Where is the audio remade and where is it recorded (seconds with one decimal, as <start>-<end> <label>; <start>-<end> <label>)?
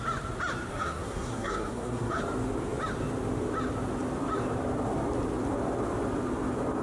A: 0.0-0.7 recorded; 0.7-2.2 remade; 2.2-6.8 recorded